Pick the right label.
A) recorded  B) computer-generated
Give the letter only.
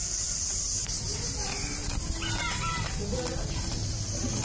A